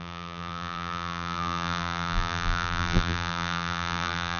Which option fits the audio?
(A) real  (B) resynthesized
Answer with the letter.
B